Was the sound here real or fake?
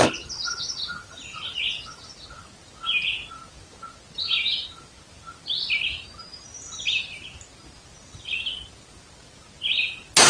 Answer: real